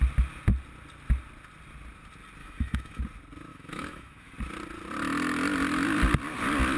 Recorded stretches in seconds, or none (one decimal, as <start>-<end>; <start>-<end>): 0.0-2.4; 3.0-3.5; 4.3-6.8